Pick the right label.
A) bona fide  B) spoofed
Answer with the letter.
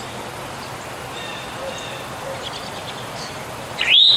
A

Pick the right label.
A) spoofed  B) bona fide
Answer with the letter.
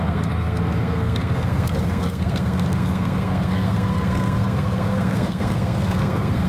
A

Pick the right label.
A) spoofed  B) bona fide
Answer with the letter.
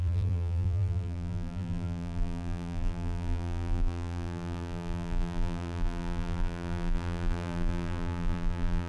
A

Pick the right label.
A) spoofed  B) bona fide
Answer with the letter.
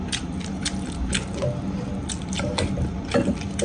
B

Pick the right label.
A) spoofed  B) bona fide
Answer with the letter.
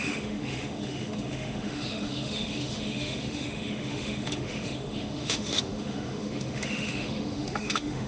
A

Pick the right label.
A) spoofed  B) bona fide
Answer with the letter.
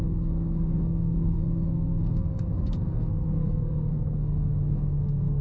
A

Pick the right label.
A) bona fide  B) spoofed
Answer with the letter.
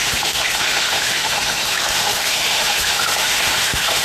B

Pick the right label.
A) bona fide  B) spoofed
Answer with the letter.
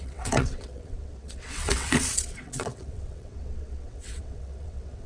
B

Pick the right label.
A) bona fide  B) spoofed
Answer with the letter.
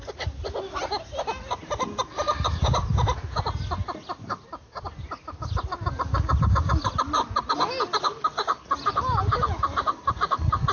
A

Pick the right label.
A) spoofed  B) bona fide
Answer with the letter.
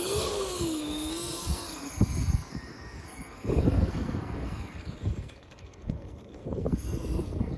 A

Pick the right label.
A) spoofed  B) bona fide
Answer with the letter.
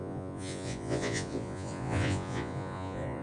A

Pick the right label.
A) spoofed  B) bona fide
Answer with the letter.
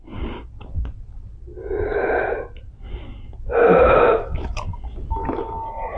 B